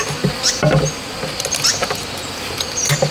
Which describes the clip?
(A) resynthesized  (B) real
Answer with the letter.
B